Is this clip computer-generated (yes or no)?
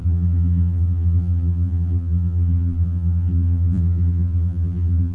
yes